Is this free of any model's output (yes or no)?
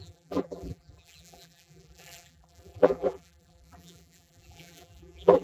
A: no